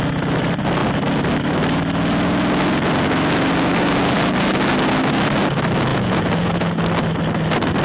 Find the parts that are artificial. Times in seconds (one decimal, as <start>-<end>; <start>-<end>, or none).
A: 5.9-6.8